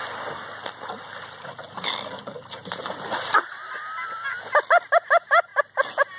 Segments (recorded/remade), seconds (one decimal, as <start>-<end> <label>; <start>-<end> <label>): 0.0-6.2 recorded